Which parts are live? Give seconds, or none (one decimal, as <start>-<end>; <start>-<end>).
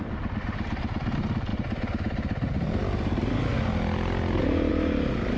0.0-5.4